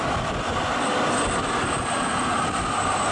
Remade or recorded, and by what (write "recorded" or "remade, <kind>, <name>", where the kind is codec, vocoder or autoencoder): recorded